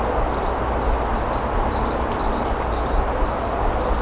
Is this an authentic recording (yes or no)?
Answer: yes